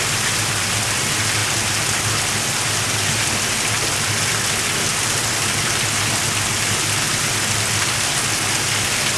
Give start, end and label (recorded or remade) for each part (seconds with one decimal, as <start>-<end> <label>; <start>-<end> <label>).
0.0-9.2 recorded